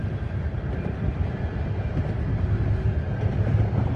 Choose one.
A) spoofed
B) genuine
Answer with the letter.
B